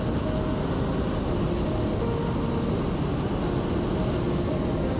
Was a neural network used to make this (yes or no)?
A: no